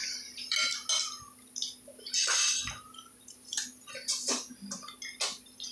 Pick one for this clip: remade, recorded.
recorded